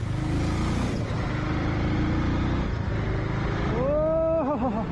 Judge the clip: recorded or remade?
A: recorded